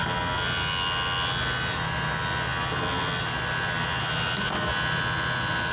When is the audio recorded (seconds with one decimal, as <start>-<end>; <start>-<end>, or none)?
0.0-5.7